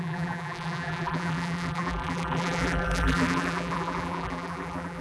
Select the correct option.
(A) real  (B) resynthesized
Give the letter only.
B